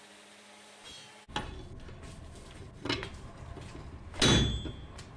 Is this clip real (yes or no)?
yes